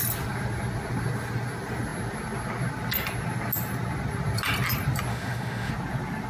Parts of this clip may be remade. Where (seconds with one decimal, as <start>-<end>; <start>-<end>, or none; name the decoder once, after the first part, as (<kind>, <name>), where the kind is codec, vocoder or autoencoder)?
5.1-5.7 (autoencoder, DAC-VAE)